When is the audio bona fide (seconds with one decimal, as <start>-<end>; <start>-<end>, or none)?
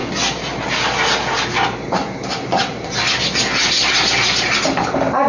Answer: 0.0-5.3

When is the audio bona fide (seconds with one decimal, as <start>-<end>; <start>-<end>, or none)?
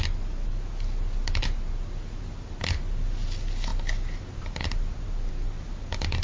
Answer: 0.0-6.2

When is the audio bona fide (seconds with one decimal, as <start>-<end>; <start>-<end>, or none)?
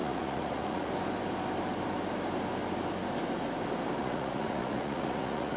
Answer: 0.9-4.0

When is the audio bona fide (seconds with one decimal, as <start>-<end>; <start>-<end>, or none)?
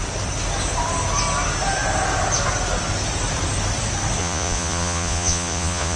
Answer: 0.0-4.2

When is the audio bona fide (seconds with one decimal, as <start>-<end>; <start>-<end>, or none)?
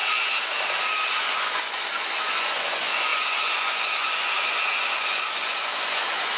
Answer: 0.0-1.1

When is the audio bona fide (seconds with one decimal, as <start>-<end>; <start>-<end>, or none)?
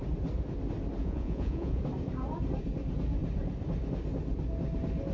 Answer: 0.0-1.0; 1.8-5.1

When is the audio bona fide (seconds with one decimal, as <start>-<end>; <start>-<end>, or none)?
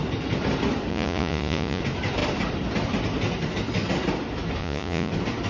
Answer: 0.0-0.9; 1.8-4.6; 5.1-5.5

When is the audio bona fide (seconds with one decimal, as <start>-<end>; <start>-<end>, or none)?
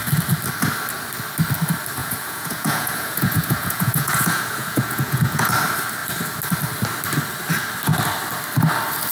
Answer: 0.0-2.0; 5.5-9.1